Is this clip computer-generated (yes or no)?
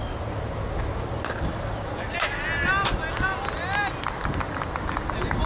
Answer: no